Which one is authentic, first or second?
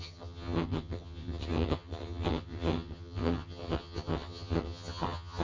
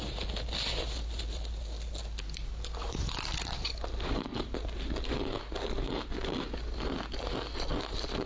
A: second